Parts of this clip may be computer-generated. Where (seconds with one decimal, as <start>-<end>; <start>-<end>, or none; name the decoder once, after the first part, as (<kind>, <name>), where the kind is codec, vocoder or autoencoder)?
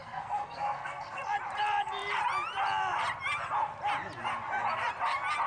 0.0-1.2 (codec, SNAC)